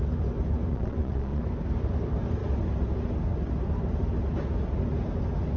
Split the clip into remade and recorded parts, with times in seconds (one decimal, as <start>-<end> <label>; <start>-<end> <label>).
0.0-0.7 recorded; 0.7-1.4 remade; 1.4-5.6 recorded